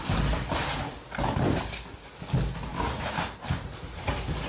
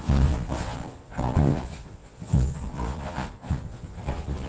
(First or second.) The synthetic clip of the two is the second